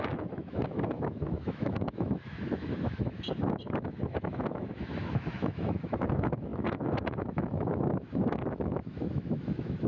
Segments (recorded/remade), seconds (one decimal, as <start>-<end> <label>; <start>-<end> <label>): 0.0-9.9 remade